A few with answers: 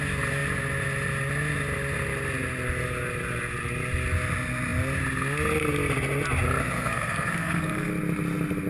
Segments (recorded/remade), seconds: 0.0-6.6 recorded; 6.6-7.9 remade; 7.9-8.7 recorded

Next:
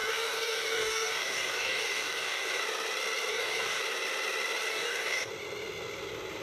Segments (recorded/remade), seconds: 0.0-2.6 remade; 2.6-3.3 recorded; 3.3-3.8 remade; 3.8-4.7 recorded; 4.7-5.3 remade; 5.3-6.4 recorded

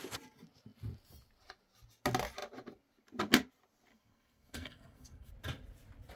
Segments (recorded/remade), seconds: 0.0-3.9 recorded; 3.9-5.3 remade; 5.3-6.2 recorded

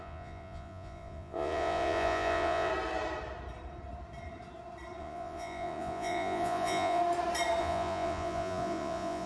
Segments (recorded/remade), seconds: 0.0-2.7 remade; 2.7-5.0 recorded; 5.0-7.0 remade; 7.0-7.6 recorded; 7.6-9.3 remade

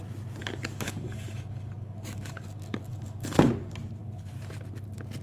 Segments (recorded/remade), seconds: 0.0-0.4 recorded; 0.4-3.5 remade; 3.5-4.0 recorded; 4.0-4.5 remade; 4.5-5.2 recorded

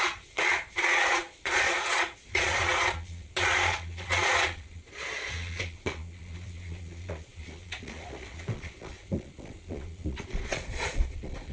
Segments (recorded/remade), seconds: 0.0-11.5 remade